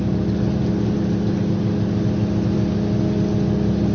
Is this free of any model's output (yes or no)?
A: yes